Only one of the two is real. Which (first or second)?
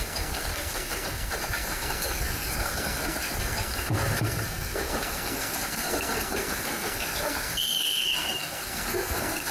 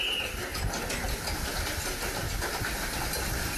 second